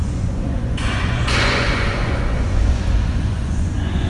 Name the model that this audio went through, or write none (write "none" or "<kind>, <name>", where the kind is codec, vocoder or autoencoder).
vocoder, Vocos